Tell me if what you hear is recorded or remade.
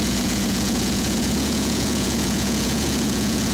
remade